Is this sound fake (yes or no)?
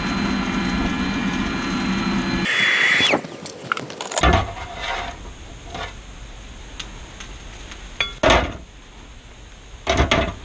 no